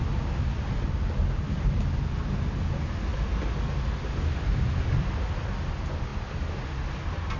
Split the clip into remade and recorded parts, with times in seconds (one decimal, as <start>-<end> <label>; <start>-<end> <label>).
0.0-7.4 recorded